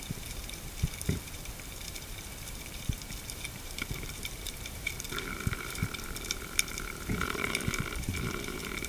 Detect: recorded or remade remade